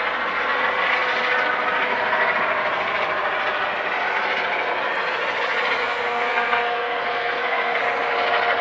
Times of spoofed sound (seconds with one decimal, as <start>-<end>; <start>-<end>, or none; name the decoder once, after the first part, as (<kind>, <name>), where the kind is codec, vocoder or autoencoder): 5.8-7.8 (codec, SNAC)